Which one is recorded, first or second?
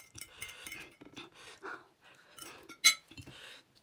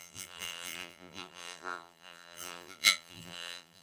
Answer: first